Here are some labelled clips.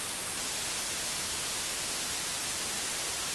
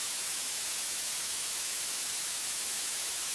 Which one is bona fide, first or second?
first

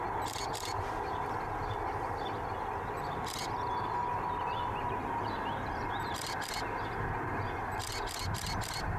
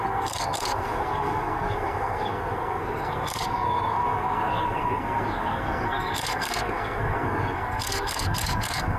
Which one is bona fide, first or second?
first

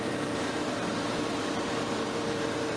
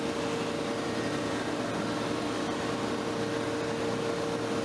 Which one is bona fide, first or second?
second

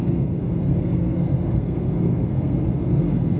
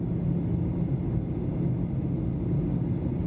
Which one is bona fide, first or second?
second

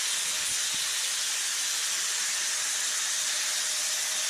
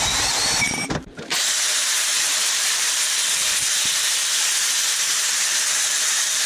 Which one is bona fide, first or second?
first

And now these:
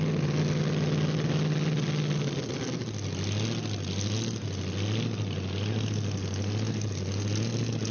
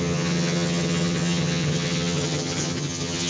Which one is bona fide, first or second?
first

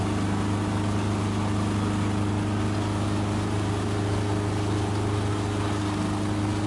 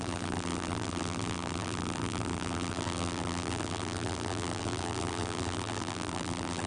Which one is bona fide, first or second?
first